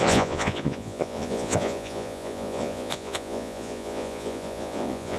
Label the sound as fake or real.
fake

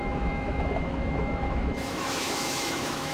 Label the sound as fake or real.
fake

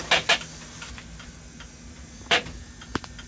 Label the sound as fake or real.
real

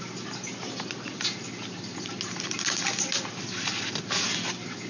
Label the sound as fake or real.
real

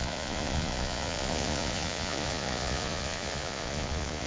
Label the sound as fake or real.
fake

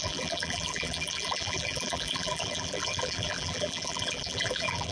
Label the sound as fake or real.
fake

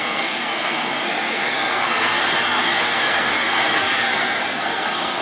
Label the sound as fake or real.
fake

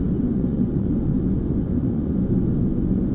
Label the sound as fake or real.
fake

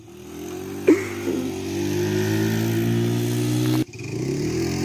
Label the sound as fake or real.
real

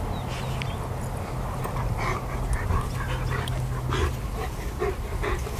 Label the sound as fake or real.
real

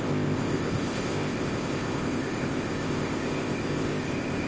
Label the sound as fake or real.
fake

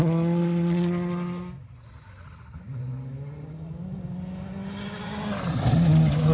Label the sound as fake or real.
real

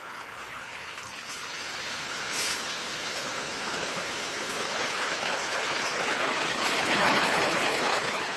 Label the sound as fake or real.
fake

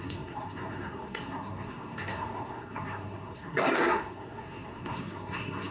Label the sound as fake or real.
fake